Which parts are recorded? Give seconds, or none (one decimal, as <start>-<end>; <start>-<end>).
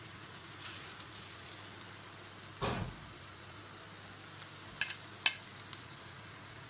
1.5-2.7; 3.6-5.8